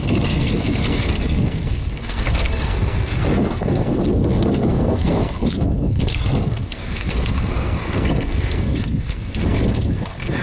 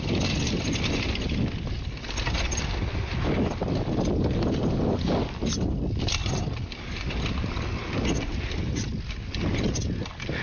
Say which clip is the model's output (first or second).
first